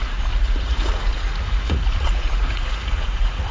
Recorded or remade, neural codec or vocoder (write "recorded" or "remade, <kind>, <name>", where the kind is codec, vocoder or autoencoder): remade, vocoder, Vocos